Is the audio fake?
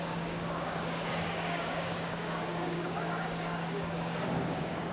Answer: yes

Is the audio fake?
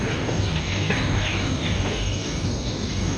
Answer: yes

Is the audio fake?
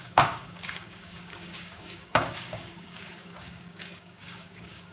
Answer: yes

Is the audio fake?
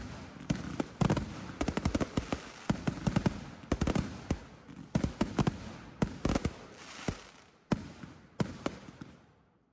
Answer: no